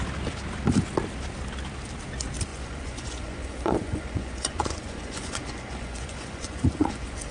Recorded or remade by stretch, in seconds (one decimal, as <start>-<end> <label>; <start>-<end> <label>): 0.0-2.5 recorded; 2.5-7.3 remade